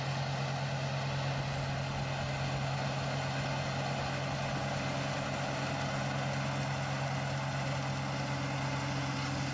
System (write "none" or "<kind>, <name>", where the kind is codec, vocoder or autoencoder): none